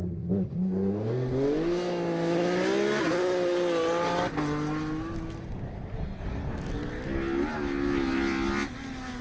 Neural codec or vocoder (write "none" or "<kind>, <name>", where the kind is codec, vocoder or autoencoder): none